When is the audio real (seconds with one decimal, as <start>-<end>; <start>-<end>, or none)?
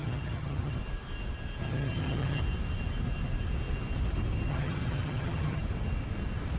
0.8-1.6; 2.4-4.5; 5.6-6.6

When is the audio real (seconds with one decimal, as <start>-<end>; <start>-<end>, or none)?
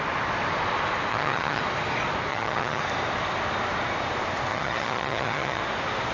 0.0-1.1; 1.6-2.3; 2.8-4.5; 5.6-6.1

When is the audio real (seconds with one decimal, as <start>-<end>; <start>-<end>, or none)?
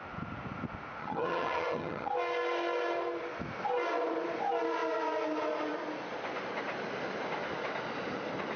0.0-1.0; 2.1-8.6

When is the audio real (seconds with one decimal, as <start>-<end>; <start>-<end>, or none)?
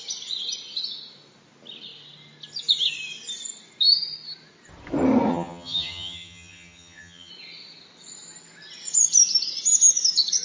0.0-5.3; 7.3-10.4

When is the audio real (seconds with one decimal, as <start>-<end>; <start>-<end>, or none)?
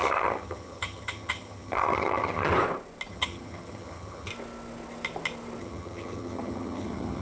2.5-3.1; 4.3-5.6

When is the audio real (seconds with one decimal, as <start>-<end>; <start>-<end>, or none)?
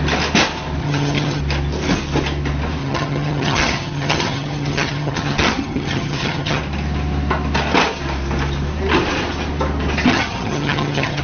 0.0-0.8; 1.4-2.8; 6.6-10.1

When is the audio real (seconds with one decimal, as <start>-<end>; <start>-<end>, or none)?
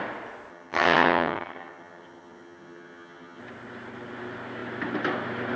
0.0-0.5; 3.4-5.6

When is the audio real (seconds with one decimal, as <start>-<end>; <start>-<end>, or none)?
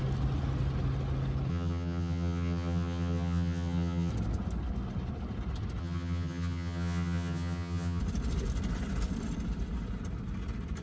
0.0-1.5; 4.1-5.8; 8.0-10.8